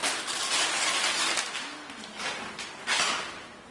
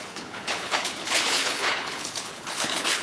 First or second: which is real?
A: first